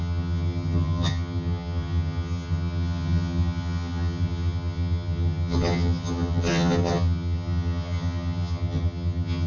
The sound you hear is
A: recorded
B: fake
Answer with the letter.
B